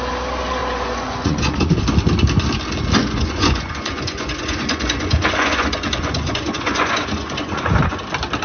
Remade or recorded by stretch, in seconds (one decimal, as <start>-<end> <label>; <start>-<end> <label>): 0.0-0.6 recorded; 0.6-1.8 remade; 1.8-3.0 recorded; 3.0-8.0 remade; 8.0-8.4 recorded